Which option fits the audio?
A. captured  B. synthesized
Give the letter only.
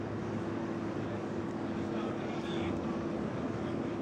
B